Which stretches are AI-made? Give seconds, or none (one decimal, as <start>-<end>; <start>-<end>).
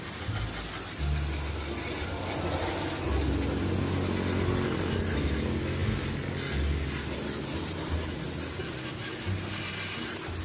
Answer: none